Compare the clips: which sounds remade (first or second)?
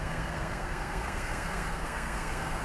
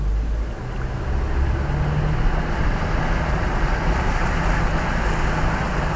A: first